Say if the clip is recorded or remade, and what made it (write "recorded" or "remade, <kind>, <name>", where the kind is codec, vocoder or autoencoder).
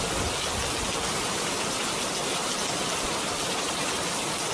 recorded